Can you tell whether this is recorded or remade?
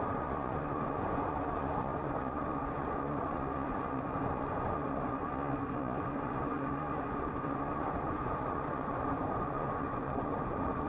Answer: remade